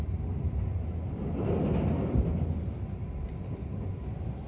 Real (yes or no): yes